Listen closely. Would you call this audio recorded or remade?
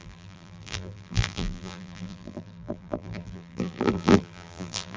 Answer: remade